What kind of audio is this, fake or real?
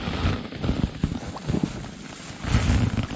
real